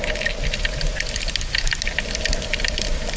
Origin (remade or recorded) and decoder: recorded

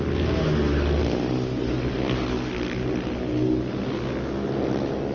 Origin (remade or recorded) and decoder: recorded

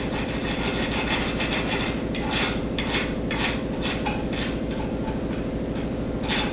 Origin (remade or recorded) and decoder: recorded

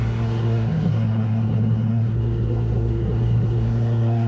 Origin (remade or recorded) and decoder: remade, codec, SNAC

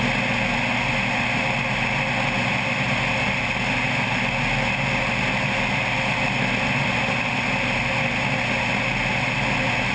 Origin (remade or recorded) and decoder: recorded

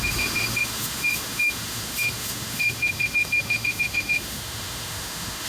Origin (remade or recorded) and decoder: remade, autoencoder, DAC-VAE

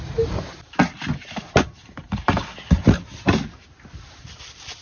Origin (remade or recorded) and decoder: recorded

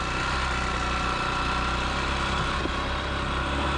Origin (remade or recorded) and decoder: recorded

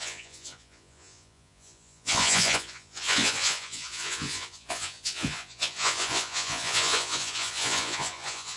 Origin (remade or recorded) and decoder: remade, vocoder, Vocos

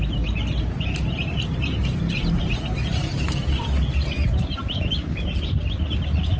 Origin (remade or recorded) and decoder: remade, vocoder, BigVGAN v2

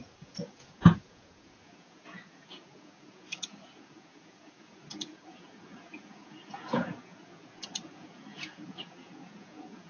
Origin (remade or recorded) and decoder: remade, vocoder, Vocos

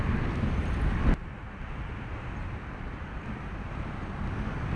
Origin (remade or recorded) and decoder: recorded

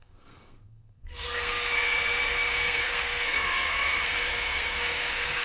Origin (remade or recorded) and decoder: remade, codec, SNAC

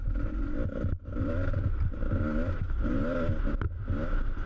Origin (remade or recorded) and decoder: recorded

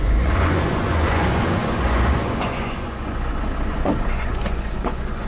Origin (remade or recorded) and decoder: remade, vocoder, Vocos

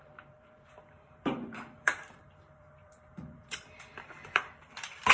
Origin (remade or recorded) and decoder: remade, vocoder, BigVGAN v2